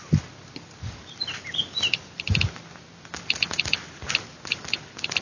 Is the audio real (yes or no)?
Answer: yes